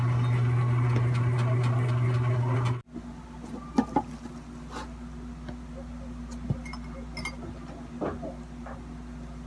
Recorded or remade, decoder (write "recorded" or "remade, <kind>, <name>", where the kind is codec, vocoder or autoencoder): recorded